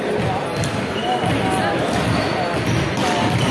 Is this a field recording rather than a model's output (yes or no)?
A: yes